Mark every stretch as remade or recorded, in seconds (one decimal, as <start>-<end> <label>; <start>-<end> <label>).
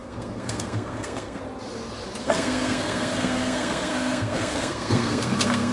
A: 0.0-1.4 remade; 1.4-2.2 recorded; 2.2-5.7 remade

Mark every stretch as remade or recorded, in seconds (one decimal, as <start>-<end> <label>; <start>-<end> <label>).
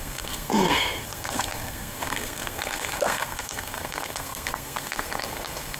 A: 0.0-5.8 remade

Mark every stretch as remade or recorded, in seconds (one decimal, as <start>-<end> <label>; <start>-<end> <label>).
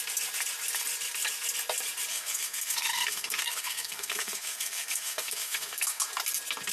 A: 0.0-2.1 recorded; 2.1-6.1 remade; 6.1-6.7 recorded